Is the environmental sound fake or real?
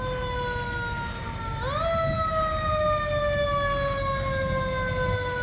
real